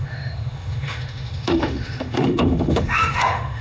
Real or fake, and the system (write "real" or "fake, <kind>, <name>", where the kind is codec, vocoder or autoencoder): fake, autoencoder, DAC-VAE